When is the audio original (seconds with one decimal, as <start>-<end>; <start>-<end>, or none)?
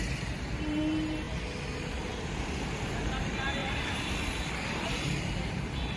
0.0-3.6